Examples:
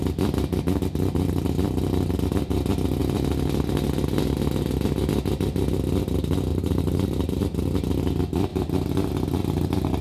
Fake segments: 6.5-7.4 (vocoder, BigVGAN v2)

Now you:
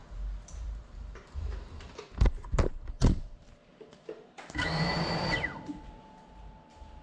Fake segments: 0.6-7.0 (vocoder, BigVGAN v2)

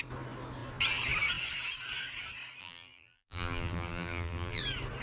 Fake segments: 2.6-4.6 (vocoder, BigVGAN v2)

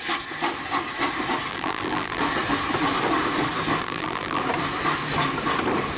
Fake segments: 1.5-2.2 (vocoder, BigVGAN v2); 3.8-4.4

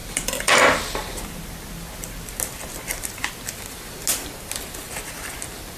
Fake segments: none

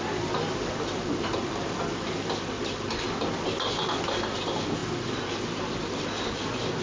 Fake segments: 0.0-4.8 (vocoder, BigVGAN v2); 5.4-6.8

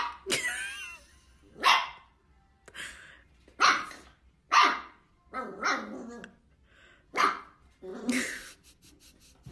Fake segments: 1.8-2.3 (vocoder, BigVGAN v2)

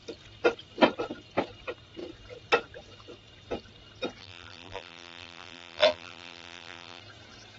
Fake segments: 4.2-7.0 (vocoder, BigVGAN v2)